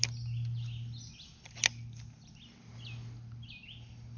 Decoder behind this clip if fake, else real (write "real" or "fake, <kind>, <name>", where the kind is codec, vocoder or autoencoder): real